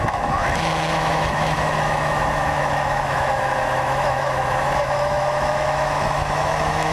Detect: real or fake fake